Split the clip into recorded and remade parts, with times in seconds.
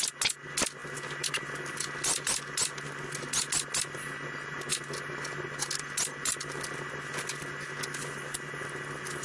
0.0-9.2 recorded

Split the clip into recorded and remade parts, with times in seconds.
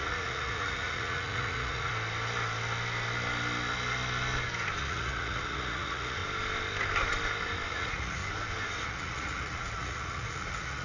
0.0-1.9 remade; 1.9-4.8 recorded; 4.8-6.2 remade; 6.2-7.7 recorded; 7.7-8.2 remade; 8.2-8.8 recorded; 8.8-10.8 remade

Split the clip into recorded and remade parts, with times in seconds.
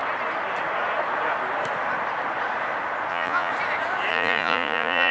0.0-3.1 recorded; 3.1-3.5 remade; 3.5-4.1 recorded; 4.1-5.1 remade